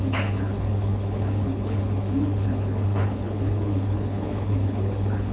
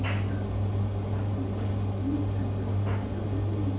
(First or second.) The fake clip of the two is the first